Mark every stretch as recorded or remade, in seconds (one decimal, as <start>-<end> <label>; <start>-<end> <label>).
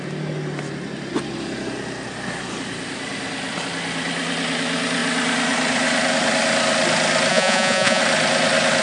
0.0-7.3 recorded; 7.3-8.0 remade; 8.0-8.8 recorded